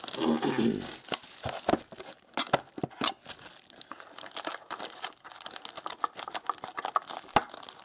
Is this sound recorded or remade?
recorded